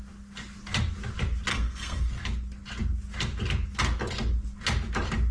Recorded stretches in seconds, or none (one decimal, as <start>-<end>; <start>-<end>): 0.0-1.5; 2.1-5.3

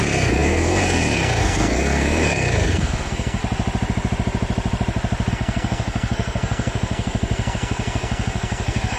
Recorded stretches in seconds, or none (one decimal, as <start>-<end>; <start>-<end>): 3.4-5.3